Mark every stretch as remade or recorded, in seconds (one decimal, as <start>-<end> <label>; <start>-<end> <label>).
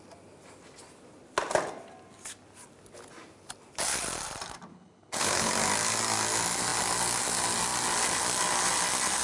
0.0-4.7 recorded; 4.7-5.5 remade; 5.5-9.2 recorded